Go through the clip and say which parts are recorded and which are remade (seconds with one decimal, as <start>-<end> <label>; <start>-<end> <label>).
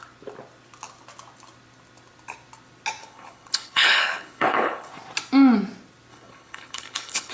0.0-3.0 recorded; 3.0-4.9 remade; 4.9-6.1 recorded; 6.1-7.3 remade